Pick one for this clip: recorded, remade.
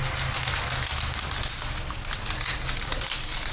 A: recorded